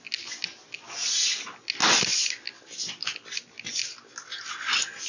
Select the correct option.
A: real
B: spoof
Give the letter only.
A